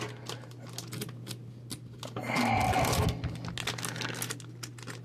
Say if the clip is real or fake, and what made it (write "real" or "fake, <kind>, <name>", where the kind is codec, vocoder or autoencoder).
real